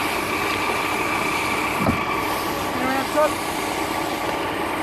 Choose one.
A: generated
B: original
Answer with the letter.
B